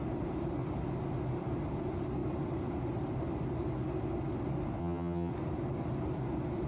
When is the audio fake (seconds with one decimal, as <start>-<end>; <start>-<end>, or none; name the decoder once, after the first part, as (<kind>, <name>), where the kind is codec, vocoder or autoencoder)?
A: 4.8-5.3 (vocoder, HiFi-GAN)